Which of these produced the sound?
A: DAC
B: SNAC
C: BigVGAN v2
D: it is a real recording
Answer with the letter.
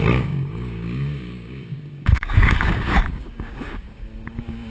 A